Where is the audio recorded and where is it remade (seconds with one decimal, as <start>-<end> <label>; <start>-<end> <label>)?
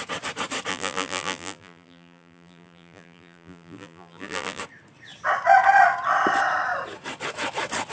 0.0-0.7 recorded; 0.7-4.6 remade; 4.6-7.9 recorded